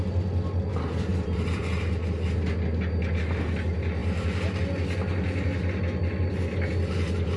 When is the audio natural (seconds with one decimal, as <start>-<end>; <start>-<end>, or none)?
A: 0.0-1.1; 1.6-4.0; 4.6-7.4